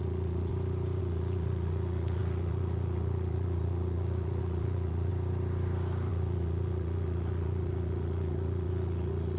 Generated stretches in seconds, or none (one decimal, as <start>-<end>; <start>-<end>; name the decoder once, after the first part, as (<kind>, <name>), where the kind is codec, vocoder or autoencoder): 0.0-0.5 (vocoder, Vocos); 1.0-5.1; 6.1-9.4